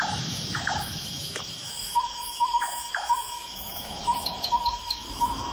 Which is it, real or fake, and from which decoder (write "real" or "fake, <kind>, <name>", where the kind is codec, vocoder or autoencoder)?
fake, autoencoder, DAC-VAE